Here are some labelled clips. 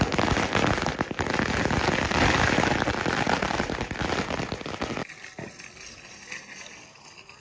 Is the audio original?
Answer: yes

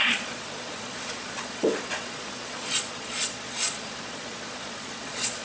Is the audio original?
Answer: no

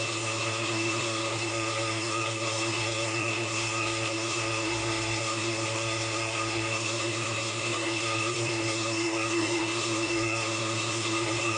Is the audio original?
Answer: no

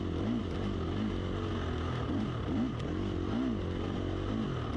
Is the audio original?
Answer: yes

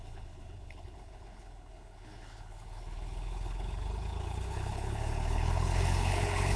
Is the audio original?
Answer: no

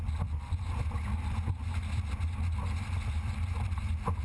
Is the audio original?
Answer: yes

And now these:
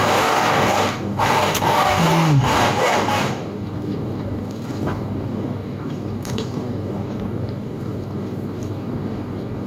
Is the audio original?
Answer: no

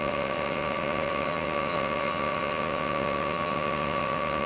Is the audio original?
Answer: no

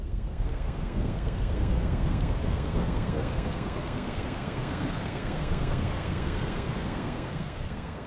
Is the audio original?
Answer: no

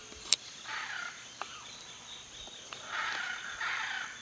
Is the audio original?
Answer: yes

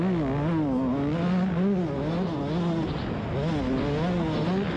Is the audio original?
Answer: yes